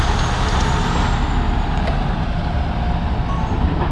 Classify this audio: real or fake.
real